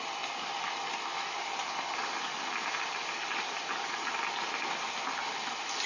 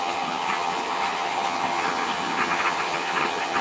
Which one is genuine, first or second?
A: first